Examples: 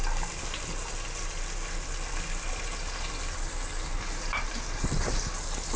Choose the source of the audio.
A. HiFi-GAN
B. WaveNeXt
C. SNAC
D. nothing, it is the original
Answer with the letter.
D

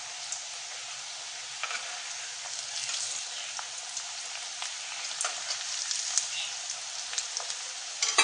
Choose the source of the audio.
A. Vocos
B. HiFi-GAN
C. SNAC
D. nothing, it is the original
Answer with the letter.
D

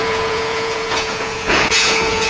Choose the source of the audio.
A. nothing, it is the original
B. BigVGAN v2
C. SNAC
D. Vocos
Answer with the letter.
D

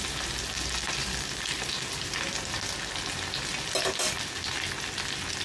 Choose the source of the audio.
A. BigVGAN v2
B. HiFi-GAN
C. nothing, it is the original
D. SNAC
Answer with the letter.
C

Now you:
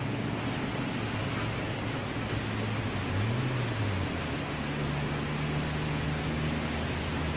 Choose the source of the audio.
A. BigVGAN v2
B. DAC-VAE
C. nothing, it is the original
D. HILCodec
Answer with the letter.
C